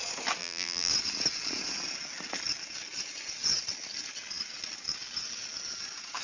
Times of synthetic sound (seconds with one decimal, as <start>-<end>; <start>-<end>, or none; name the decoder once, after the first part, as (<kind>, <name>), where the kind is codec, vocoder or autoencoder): 0.4-0.9 (vocoder, BigVGAN v2)